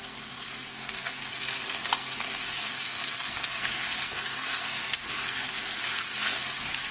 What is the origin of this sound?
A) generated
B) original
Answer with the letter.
A